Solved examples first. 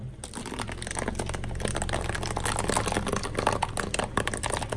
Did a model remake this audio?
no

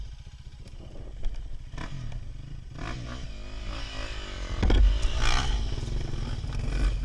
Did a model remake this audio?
no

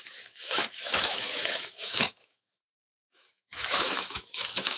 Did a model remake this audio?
yes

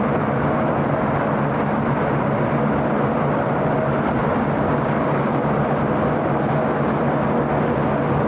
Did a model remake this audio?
no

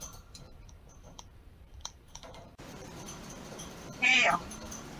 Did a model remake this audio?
yes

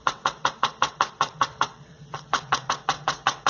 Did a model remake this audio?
yes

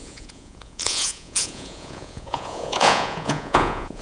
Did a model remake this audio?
yes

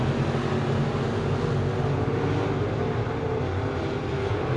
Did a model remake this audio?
no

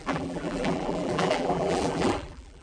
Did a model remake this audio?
yes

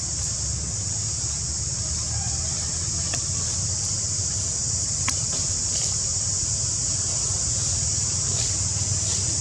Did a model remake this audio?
no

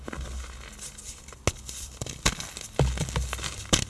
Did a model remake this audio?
no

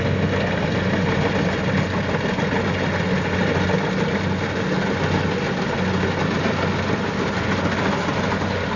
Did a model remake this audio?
no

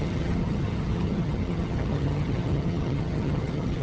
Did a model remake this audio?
yes